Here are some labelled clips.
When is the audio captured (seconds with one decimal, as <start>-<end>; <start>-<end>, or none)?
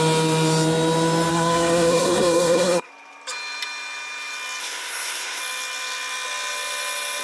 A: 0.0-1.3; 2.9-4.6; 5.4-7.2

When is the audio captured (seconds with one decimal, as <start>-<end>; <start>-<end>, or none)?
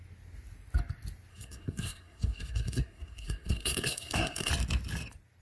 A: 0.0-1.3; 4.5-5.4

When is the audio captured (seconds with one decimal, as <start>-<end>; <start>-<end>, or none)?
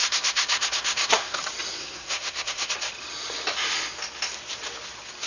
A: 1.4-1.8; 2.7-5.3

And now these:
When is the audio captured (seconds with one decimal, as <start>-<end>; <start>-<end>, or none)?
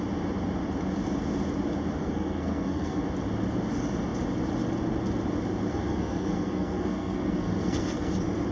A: 0.0-2.0; 3.0-5.7; 8.1-8.5